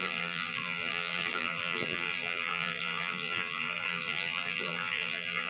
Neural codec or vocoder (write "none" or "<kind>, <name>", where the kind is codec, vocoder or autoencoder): vocoder, BigVGAN v2